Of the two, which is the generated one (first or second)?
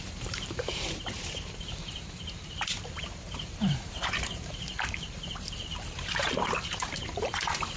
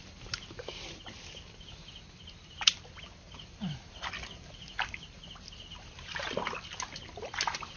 first